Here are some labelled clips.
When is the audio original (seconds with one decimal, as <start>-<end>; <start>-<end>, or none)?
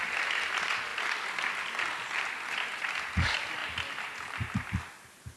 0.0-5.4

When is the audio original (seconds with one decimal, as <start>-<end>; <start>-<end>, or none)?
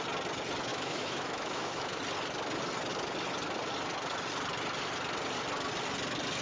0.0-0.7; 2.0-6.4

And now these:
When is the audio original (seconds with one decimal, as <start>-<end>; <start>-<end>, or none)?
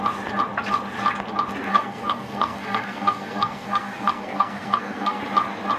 0.0-1.7; 5.2-5.8